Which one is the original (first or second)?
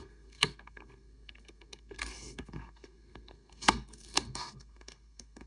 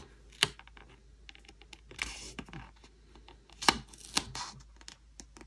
second